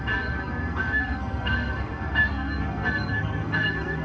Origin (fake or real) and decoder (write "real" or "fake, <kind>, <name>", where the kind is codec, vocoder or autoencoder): fake, codec, SNAC